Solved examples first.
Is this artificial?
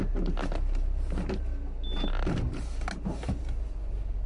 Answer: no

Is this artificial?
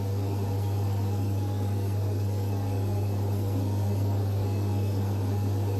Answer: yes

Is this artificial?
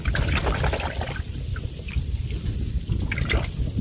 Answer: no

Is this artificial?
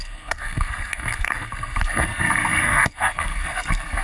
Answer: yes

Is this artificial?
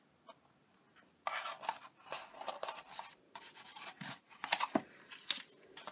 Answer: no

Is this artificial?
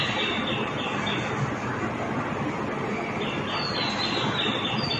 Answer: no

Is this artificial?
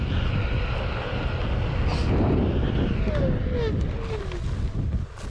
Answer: no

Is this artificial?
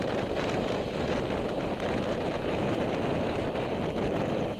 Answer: no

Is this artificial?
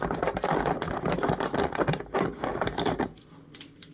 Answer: no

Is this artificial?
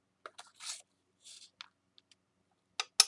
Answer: no